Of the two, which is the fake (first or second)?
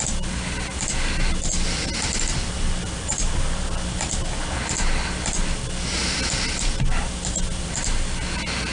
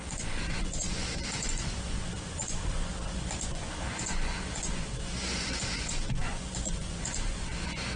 second